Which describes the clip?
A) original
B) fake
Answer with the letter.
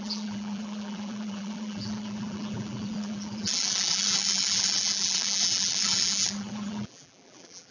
B